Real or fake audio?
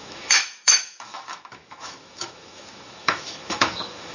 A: fake